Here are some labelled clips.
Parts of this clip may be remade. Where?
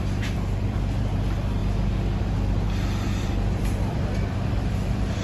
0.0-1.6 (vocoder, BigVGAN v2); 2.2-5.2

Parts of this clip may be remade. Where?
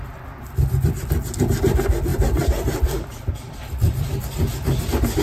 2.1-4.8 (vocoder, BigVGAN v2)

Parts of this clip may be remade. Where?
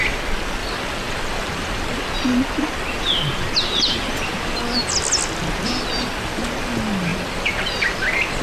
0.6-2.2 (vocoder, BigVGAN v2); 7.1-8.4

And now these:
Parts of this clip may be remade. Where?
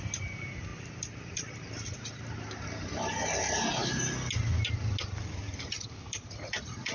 0.0-3.8 (vocoder, BigVGAN v2); 5.2-6.9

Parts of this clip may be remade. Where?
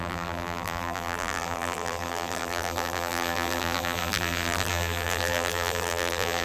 0.0-6.4 (vocoder, BigVGAN v2)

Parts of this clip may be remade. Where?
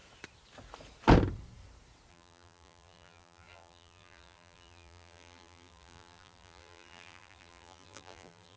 2.1-8.6 (vocoder, BigVGAN v2)